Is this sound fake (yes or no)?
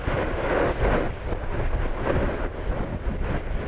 no